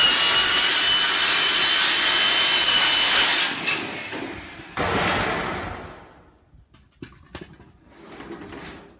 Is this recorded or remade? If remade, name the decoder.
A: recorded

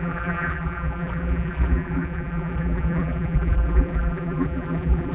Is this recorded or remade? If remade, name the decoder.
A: remade, vocoder, BigVGAN v2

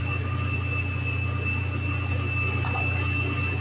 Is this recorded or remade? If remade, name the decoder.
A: recorded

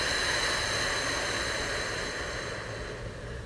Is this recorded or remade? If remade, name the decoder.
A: recorded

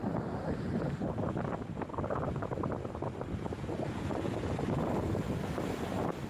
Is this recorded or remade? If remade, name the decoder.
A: recorded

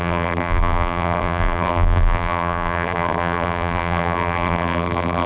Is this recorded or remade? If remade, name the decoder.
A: remade, vocoder, BigVGAN v2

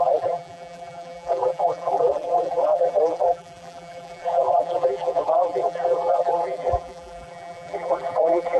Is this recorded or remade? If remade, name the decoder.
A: remade, vocoder, BigVGAN v2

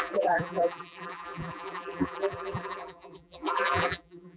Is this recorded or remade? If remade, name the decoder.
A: remade, vocoder, BigVGAN v2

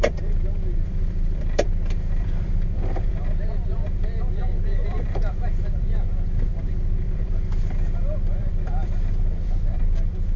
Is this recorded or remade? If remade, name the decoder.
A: remade, vocoder, BigVGAN v2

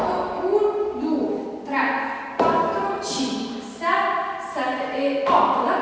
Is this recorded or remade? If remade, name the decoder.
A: recorded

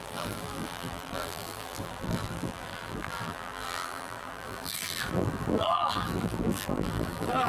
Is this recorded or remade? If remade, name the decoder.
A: remade, vocoder, BigVGAN v2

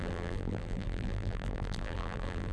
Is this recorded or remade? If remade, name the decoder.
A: remade, vocoder, BigVGAN v2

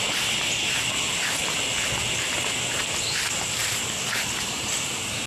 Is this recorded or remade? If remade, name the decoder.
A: recorded